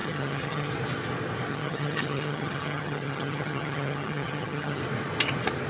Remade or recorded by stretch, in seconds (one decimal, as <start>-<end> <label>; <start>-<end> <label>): 0.0-0.7 remade; 0.7-1.5 recorded; 1.5-4.8 remade; 4.8-5.7 recorded